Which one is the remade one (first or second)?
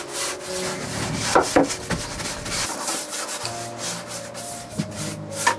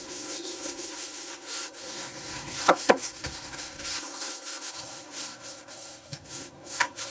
second